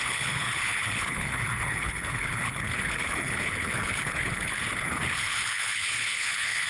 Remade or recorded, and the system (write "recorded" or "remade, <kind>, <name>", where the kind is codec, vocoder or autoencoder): remade, codec, HILCodec